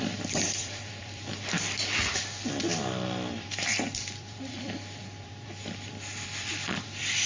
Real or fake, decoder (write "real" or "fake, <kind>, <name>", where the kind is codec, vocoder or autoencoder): fake, vocoder, BigVGAN v2